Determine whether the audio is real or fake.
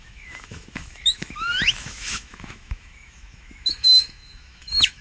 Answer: fake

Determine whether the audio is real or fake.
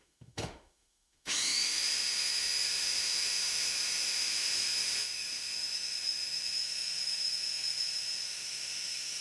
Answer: fake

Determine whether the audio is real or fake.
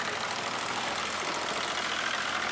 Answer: real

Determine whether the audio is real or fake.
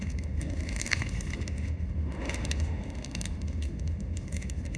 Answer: fake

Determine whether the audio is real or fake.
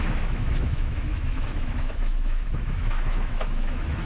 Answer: fake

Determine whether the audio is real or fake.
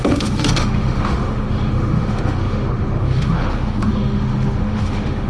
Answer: fake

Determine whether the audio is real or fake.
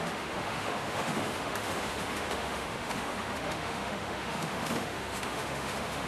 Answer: fake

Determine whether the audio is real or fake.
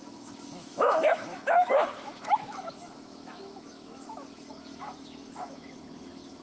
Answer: fake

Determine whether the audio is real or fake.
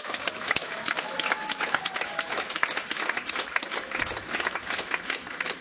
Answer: fake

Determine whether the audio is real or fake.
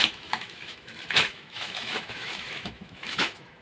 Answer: fake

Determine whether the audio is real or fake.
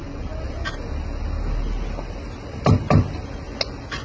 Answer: real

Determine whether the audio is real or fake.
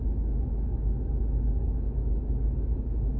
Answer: fake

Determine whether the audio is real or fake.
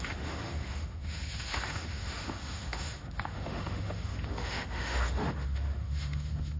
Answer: fake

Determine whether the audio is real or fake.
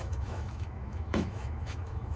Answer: fake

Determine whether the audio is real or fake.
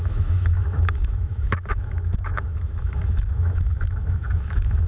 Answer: fake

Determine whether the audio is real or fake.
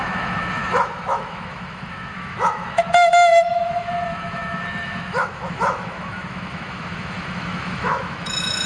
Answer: fake